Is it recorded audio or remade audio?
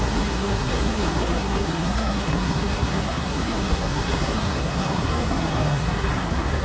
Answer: remade